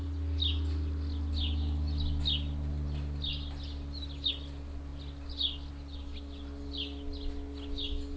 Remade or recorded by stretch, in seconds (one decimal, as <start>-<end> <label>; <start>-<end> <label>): 0.0-8.2 recorded